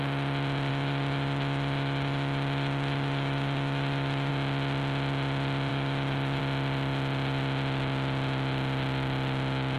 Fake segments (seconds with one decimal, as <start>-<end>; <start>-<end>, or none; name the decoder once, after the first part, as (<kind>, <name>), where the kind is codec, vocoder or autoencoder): 0.7-4.3 (autoencoder, DAC-VAE); 5.7-6.4